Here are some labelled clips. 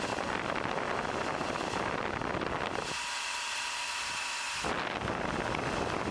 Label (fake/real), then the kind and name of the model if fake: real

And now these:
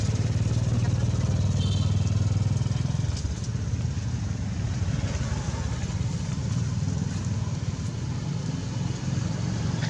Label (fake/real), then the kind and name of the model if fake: real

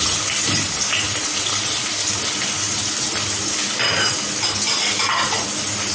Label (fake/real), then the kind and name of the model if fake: real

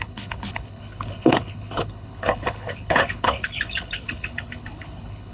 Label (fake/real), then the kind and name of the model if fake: fake, codec, HILCodec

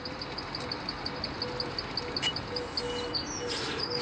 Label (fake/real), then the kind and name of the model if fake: real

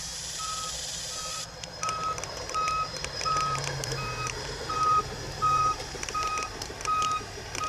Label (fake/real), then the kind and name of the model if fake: fake, vocoder, BigVGAN v2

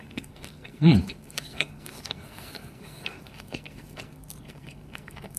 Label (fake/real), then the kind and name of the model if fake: fake, codec, SNAC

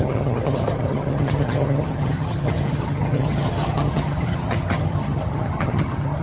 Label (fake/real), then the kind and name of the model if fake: fake, vocoder, HiFi-GAN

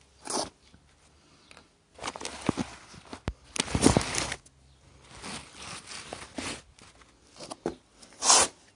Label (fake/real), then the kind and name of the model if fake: real